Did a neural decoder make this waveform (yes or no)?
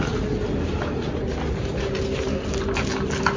no